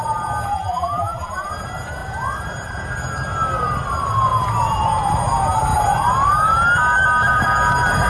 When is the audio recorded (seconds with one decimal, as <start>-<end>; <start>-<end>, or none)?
0.0-0.5; 1.5-8.1

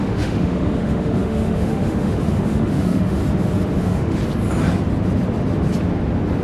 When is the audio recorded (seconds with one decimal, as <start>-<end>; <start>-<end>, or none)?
3.2-3.8; 4.2-6.4

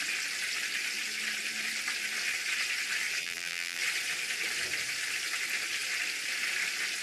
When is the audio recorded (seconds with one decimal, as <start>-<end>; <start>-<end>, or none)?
0.0-3.2; 3.8-7.0

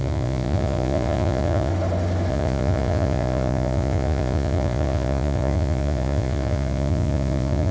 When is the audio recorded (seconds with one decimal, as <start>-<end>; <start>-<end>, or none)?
1.7-2.3